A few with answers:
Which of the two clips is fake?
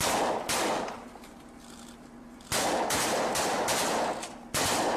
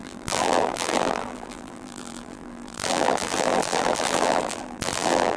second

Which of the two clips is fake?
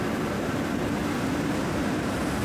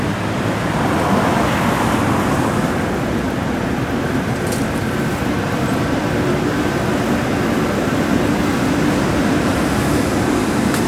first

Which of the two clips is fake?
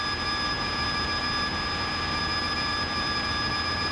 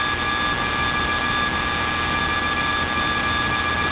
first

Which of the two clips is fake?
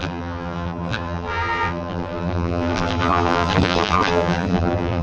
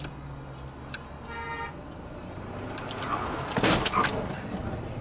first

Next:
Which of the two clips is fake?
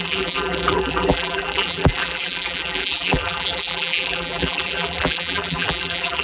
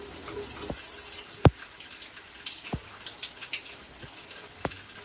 first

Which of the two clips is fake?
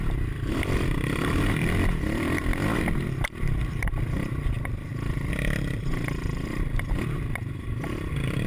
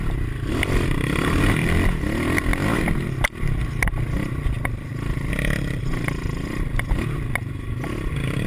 first